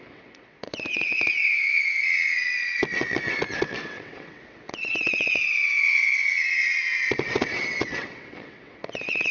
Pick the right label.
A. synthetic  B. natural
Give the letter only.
A